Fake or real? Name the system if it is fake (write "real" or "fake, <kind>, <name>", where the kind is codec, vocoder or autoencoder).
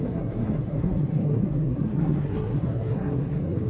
fake, codec, SNAC